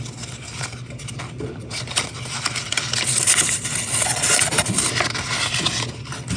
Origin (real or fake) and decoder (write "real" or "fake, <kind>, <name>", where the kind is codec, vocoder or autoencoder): real